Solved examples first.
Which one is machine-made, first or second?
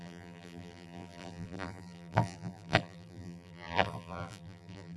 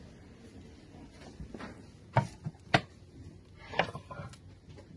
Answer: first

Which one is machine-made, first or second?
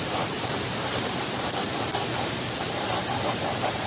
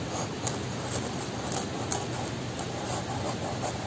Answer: first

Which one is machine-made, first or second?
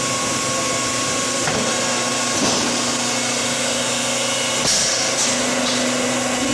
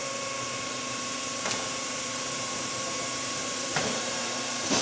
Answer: second